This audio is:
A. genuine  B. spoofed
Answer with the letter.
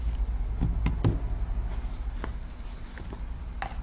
A